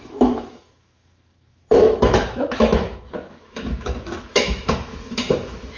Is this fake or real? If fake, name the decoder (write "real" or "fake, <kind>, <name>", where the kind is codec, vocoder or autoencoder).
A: fake, autoencoder, DAC-VAE